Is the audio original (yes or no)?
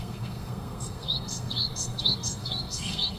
no